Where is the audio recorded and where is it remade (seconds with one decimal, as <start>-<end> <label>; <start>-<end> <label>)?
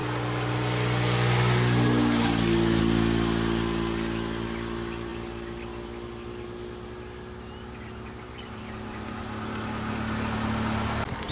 0.0-11.3 recorded